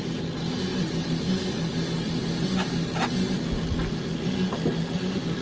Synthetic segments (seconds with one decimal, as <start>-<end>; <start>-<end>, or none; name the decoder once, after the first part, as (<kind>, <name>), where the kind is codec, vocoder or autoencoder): none